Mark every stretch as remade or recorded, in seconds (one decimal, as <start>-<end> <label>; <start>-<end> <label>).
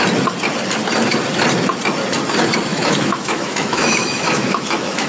0.0-2.7 recorded; 2.7-5.1 remade